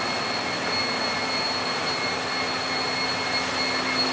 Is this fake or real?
real